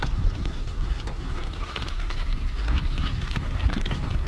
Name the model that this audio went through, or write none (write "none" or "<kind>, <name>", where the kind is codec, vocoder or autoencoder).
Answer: codec, SNAC